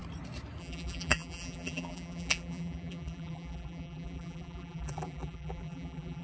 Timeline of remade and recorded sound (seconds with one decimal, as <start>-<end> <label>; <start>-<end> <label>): 0.0-0.6 recorded; 0.6-6.2 remade